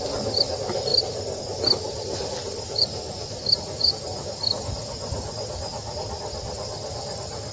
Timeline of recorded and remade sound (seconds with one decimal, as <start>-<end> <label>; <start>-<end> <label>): 0.0-7.5 recorded